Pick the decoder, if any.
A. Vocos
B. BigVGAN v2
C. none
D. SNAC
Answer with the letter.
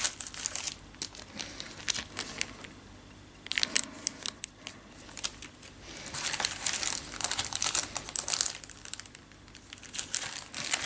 C